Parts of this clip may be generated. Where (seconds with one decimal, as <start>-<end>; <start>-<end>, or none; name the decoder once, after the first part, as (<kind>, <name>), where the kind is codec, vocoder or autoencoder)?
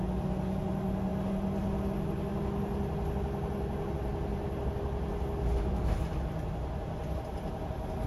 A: none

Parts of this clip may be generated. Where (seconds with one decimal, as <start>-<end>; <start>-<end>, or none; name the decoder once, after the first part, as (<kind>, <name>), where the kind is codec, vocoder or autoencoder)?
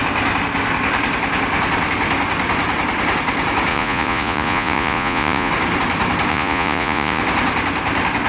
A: 3.7-5.5 (vocoder, Vocos); 6.3-7.2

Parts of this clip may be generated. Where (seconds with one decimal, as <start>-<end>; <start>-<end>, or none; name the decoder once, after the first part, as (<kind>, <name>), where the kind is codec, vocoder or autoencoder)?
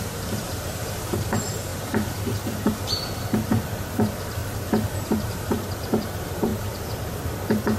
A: 0.0-4.4 (vocoder, BigVGAN v2); 5.0-7.8